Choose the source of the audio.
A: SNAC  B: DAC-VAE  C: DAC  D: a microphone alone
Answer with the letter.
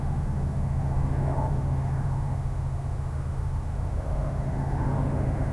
B